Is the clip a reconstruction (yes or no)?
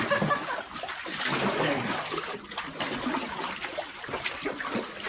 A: no